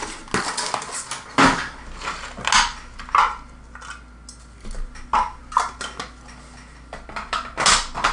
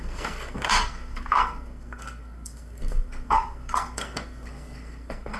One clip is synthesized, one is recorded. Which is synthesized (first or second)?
second